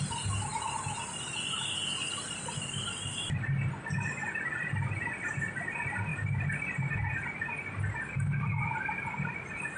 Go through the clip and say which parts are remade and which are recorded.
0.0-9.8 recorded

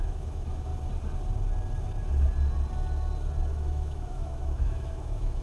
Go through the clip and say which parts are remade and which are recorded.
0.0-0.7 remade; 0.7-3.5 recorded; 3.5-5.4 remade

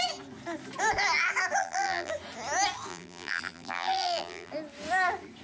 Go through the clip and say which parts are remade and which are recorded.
0.0-1.6 recorded; 1.6-2.1 remade; 2.1-2.9 recorded; 2.9-4.5 remade; 4.5-5.4 recorded

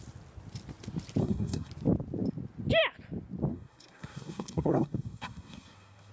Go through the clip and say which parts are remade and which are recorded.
0.0-1.2 recorded; 1.2-1.7 remade; 1.7-3.5 recorded; 3.5-6.1 remade

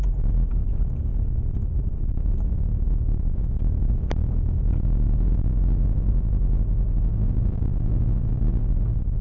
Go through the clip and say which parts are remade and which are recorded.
0.0-0.6 recorded; 0.6-2.5 remade; 2.5-9.2 recorded